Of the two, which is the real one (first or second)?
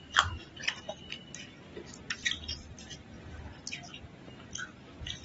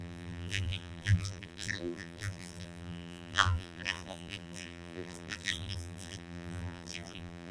first